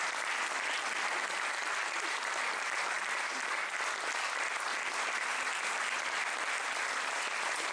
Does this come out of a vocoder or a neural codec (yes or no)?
no